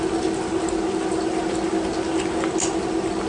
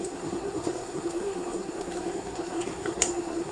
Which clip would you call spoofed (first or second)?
second